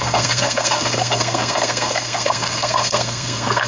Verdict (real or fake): fake